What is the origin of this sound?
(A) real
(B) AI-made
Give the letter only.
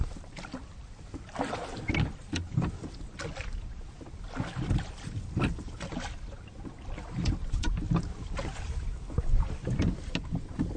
A